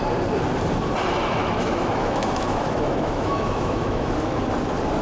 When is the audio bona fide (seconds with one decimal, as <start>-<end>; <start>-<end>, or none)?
0.0-1.4; 4.4-5.0